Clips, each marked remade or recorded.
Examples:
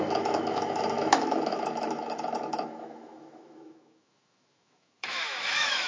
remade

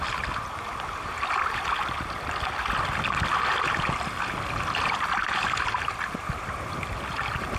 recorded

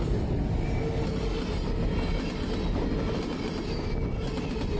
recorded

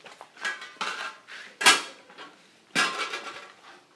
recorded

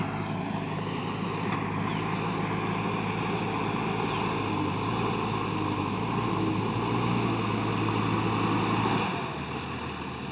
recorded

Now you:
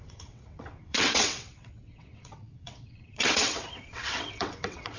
remade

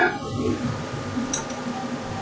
recorded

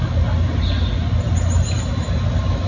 recorded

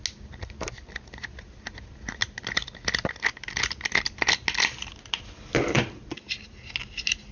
recorded